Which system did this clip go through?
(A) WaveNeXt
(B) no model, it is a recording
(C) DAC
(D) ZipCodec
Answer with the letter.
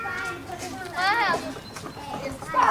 B